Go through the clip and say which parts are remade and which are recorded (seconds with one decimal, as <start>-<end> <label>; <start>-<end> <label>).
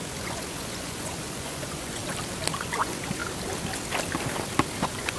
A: 0.0-2.0 remade; 2.0-2.6 recorded; 2.6-3.2 remade; 3.2-4.8 recorded; 4.8-5.2 remade